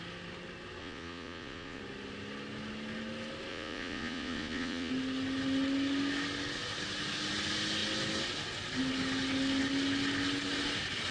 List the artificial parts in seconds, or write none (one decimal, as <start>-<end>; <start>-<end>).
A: 0.8-1.8; 3.5-4.9

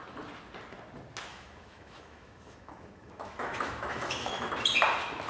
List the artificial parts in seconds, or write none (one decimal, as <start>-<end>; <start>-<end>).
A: 1.3-4.5

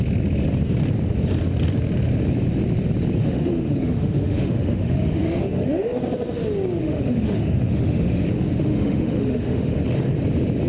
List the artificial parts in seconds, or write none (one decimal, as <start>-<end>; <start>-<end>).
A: 3.2-6.0; 6.8-9.8

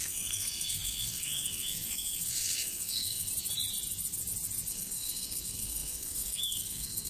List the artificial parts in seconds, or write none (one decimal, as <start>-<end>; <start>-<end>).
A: 0.0-3.3; 4.7-7.1